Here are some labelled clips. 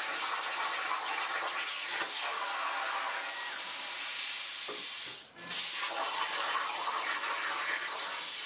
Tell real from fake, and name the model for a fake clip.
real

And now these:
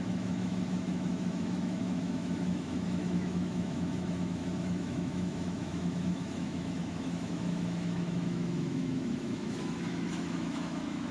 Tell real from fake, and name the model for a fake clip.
fake, autoencoder, DAC-VAE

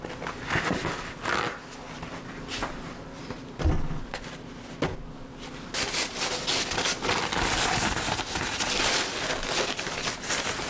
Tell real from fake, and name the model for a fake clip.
real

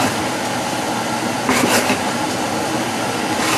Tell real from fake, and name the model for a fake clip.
real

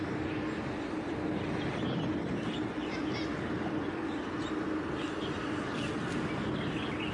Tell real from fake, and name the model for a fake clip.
real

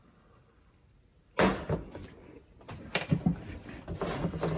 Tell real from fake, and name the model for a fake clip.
real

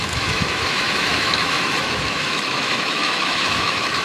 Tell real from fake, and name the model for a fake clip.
fake, autoencoder, DAC-VAE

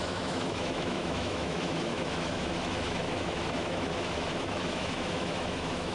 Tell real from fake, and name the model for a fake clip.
fake, autoencoder, DAC-VAE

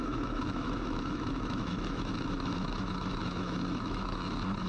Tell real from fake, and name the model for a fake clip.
fake, autoencoder, DAC-VAE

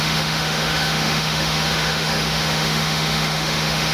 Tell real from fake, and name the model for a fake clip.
fake, autoencoder, DAC-VAE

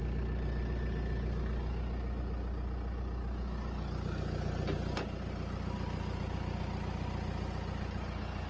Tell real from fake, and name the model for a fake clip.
real